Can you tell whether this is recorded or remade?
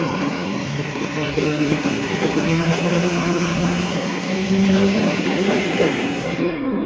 remade